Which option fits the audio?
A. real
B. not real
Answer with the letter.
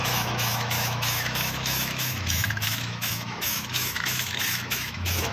B